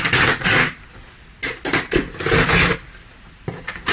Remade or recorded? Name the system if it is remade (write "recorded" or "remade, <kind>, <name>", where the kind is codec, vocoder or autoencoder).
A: recorded